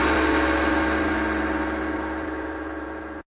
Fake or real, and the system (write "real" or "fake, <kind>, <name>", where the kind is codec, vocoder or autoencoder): real